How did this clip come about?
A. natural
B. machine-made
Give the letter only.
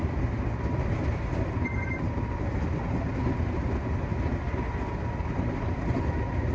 A